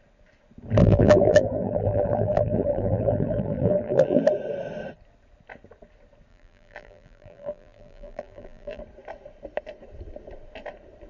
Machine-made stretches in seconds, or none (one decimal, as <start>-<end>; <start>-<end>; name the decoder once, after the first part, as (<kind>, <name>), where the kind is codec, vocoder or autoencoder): 0.8-4.2 (vocoder, BigVGAN v2); 6.3-8.8